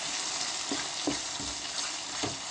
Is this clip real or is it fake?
real